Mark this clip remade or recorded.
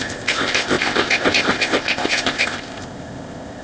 remade